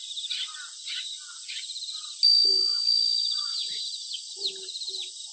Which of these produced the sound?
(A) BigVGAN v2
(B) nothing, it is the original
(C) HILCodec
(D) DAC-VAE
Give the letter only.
B